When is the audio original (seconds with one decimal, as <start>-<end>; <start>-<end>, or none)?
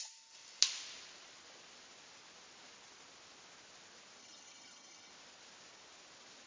0.0-4.2; 5.1-6.5